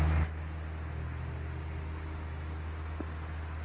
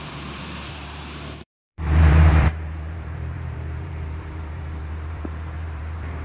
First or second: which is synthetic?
second